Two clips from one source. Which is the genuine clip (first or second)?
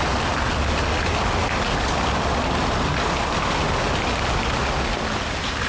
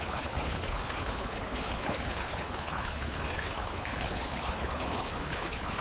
first